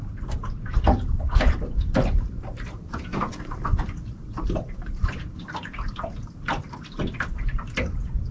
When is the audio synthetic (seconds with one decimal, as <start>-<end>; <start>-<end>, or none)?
0.4-2.3; 3.1-7.9